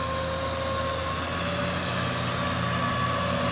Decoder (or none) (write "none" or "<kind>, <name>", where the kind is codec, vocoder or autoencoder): none